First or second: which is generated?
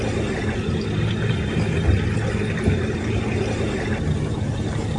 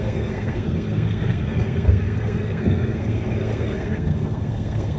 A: second